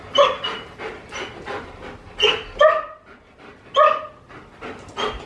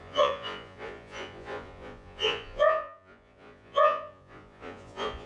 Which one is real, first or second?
first